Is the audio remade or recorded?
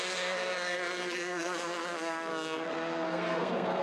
remade